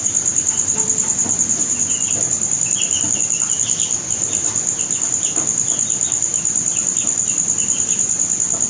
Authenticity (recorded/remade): recorded